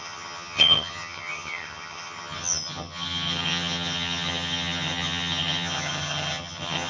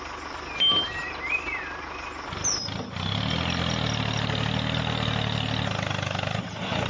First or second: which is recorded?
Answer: second